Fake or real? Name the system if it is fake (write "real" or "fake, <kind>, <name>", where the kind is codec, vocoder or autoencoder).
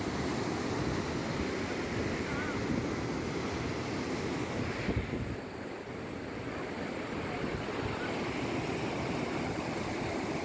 real